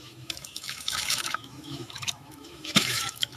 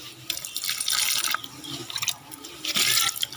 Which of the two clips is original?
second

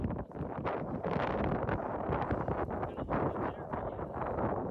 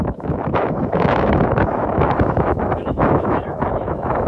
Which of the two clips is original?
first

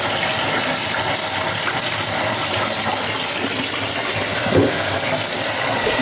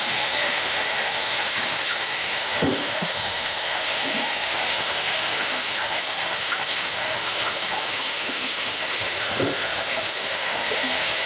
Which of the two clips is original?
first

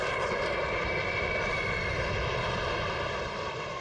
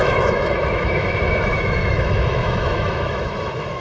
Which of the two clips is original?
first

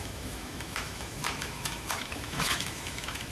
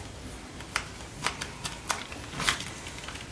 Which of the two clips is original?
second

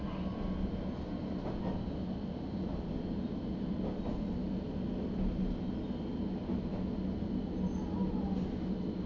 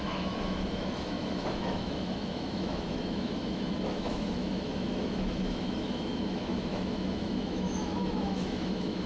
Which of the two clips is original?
first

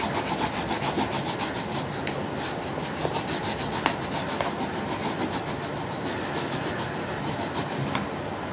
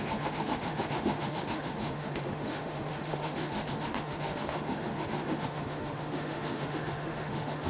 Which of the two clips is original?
first